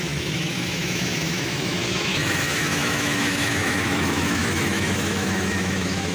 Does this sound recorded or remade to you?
remade